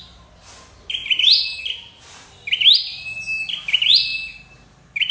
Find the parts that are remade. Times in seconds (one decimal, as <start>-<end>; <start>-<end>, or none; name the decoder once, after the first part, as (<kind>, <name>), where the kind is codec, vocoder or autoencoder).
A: none